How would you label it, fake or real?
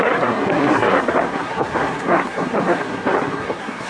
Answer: fake